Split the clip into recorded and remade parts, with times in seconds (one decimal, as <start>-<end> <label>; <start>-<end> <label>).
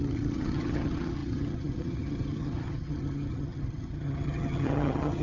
0.0-5.2 remade